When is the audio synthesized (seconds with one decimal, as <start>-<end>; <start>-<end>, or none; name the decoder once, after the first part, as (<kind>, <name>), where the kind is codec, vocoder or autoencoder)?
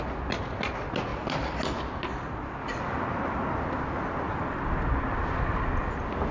none